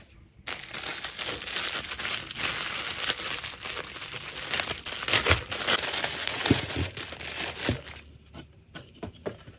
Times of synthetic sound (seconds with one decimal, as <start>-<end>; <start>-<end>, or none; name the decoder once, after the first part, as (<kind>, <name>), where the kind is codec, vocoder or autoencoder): 6.2-6.9 (vocoder, Vocos)